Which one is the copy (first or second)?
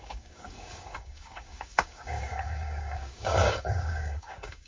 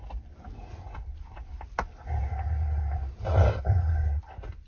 first